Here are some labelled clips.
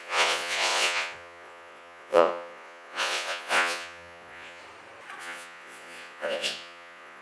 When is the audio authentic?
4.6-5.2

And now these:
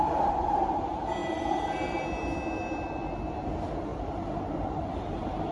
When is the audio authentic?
0.0-1.2; 2.0-3.9; 5.1-5.5